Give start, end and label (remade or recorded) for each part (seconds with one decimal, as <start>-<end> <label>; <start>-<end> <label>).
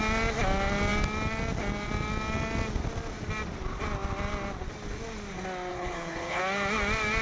0.0-5.7 recorded; 5.7-6.4 remade; 6.4-7.2 recorded